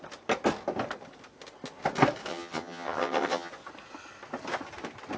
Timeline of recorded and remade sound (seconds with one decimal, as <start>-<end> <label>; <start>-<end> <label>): 0.0-2.3 recorded; 2.3-3.5 remade; 3.5-5.2 recorded